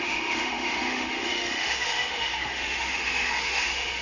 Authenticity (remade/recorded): remade